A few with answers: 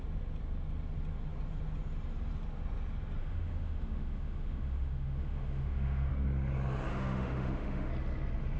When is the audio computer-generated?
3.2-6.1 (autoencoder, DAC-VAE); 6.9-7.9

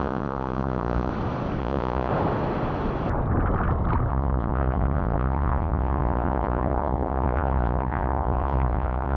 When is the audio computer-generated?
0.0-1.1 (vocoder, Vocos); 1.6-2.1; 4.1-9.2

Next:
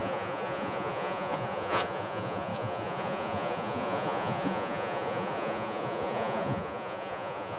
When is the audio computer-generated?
0.0-7.6 (vocoder, Vocos)